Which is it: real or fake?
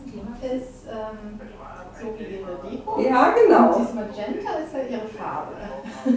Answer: real